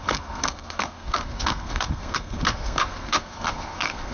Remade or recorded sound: remade